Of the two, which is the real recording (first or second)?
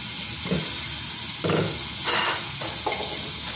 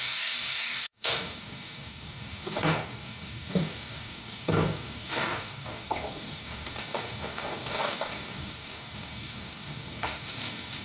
first